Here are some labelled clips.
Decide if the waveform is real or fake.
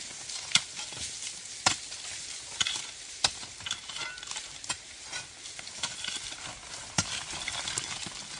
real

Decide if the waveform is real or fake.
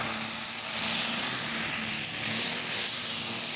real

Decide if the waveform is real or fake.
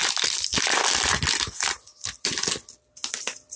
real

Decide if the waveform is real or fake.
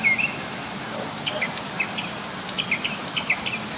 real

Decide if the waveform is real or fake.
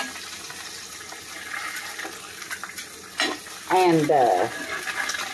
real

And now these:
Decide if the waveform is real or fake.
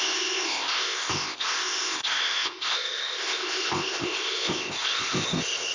fake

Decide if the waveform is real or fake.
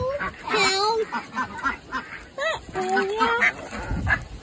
real